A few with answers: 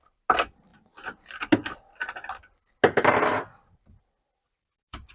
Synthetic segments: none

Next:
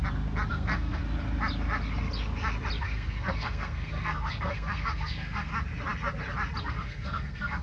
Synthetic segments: 0.5-1.0; 2.8-5.5; 6.6-7.6

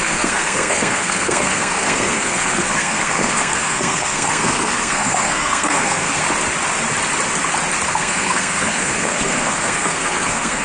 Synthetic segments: 0.0-6.2; 7.9-10.6

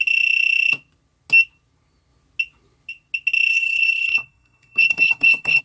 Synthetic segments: 3.5-5.6

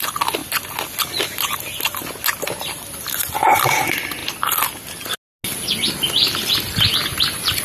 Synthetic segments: none